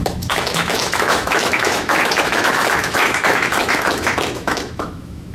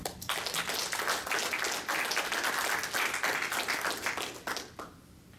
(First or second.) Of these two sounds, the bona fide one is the second